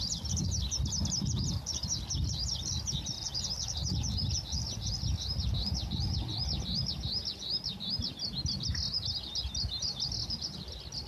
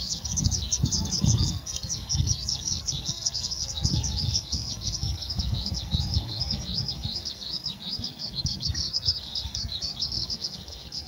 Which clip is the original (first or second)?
first